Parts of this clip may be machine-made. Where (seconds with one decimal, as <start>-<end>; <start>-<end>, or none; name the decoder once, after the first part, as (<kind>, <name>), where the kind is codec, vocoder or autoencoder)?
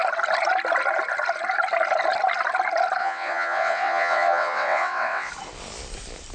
3.0-5.3 (vocoder, WaveNeXt)